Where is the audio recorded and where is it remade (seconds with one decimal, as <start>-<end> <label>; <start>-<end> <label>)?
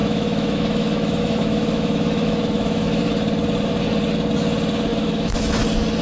0.0-3.0 remade; 3.0-4.9 recorded; 4.9-5.4 remade; 5.4-6.0 recorded